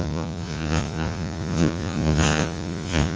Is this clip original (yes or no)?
no